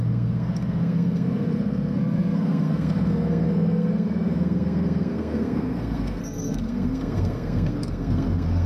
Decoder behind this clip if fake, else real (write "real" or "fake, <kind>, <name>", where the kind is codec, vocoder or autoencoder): fake, codec, SNAC